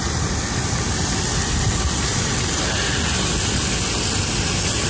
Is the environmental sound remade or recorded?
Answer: recorded